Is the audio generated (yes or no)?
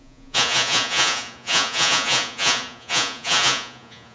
yes